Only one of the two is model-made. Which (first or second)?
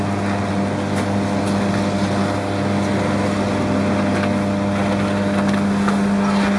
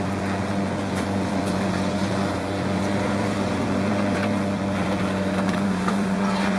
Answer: second